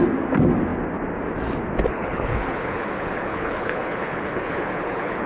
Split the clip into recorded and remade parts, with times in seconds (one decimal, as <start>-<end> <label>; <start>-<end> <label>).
0.0-1.9 recorded; 1.9-5.3 remade